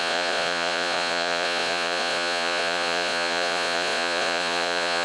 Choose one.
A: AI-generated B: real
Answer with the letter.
A